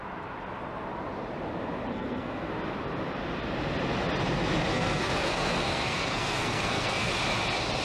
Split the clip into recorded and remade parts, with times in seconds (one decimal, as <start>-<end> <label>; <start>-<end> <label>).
0.0-1.9 recorded; 1.9-2.5 remade; 2.5-4.7 recorded; 4.7-7.1 remade; 7.1-7.8 recorded